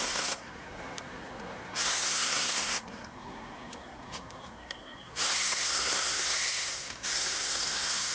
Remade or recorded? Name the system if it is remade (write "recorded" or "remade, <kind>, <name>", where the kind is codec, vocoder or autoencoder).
remade, codec, SNAC